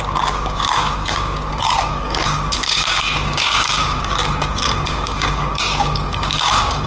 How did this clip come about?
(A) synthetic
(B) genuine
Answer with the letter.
A